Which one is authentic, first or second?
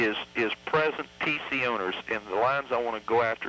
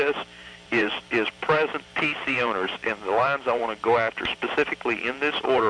first